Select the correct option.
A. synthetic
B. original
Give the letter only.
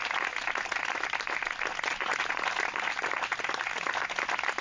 B